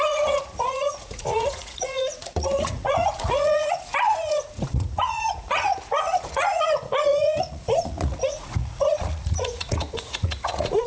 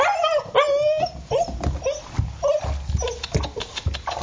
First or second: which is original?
second